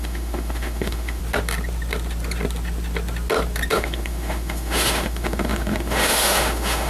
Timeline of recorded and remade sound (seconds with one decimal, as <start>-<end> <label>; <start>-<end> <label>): 0.0-1.2 remade; 1.2-3.7 recorded; 3.7-6.9 remade